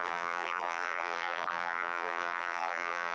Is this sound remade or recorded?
remade